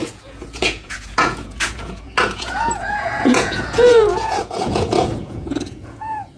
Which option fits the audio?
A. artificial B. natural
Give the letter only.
A